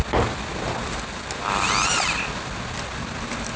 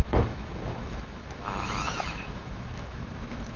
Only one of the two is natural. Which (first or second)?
first